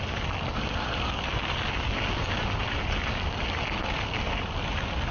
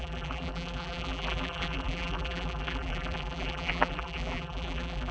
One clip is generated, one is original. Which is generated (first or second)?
second